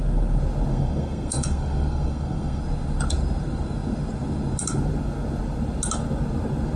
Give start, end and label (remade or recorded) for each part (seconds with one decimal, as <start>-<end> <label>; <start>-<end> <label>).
0.0-0.7 recorded; 0.7-2.6 remade; 2.6-6.8 recorded